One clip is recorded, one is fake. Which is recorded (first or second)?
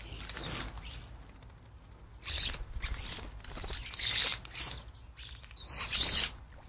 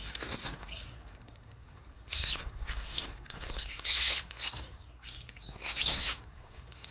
first